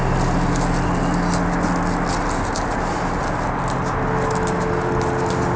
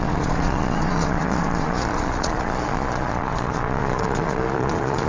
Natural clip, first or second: first